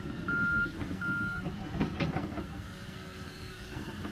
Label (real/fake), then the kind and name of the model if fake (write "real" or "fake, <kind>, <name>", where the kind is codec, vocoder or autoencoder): fake, codec, SNAC